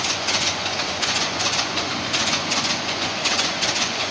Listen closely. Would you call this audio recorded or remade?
remade